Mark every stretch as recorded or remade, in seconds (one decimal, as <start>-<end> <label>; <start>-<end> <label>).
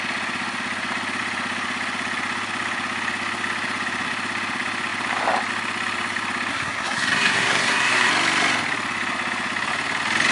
0.0-6.5 recorded; 6.5-8.1 remade; 8.1-10.3 recorded